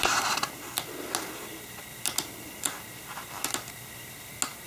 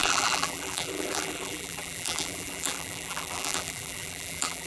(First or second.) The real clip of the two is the first